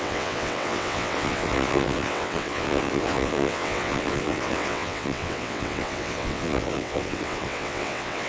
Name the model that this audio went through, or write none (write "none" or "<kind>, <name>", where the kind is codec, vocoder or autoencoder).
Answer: vocoder, WaveNeXt